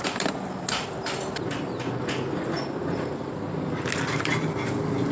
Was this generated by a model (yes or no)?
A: no